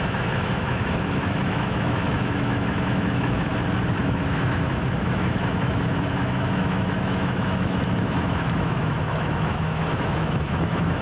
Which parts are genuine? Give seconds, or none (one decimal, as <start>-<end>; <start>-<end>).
3.5-4.0